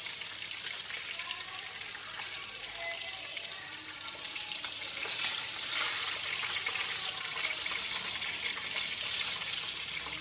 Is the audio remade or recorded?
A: recorded